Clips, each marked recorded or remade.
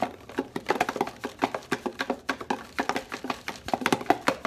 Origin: recorded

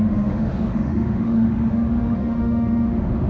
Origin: remade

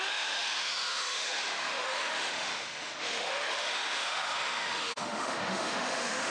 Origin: remade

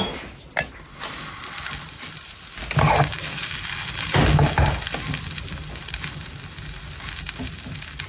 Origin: recorded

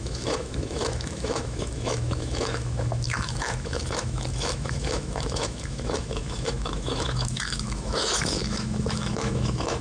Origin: remade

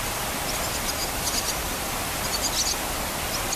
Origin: recorded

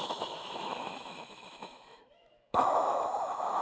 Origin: remade